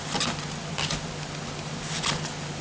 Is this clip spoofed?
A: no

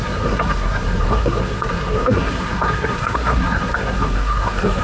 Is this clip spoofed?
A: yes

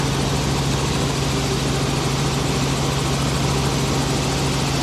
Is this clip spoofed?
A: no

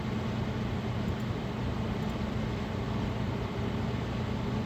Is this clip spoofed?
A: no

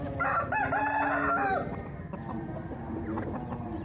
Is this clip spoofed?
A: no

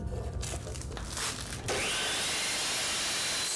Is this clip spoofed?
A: no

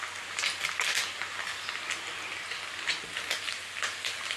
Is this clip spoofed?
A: no